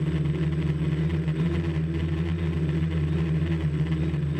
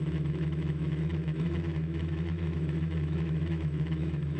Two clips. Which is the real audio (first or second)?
first